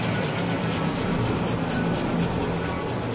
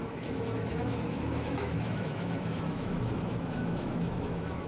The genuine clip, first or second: first